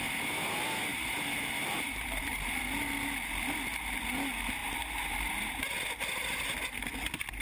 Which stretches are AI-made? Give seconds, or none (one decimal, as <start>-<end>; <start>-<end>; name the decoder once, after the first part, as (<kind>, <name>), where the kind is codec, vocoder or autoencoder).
0.9-2.6 (vocoder, BigVGAN v2); 4.6-5.6